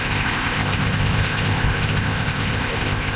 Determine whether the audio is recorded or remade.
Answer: remade